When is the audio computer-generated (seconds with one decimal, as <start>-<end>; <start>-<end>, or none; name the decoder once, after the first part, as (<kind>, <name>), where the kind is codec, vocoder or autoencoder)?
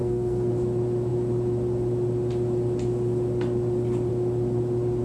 0.0-0.5 (codec, SNAC)